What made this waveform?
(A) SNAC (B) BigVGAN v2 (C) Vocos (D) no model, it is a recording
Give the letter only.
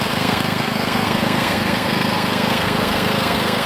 A